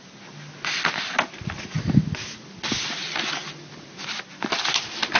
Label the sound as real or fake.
real